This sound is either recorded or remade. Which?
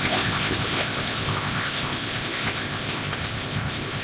remade